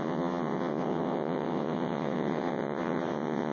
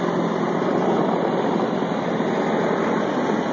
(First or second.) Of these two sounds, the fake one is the first